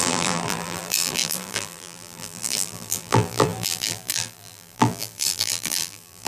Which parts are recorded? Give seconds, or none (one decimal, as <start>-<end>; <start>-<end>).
none